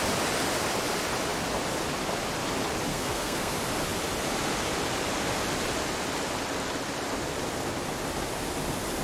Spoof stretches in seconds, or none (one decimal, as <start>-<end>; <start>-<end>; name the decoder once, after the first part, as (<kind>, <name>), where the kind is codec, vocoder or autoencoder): 2.9-3.5 (codec, SNAC)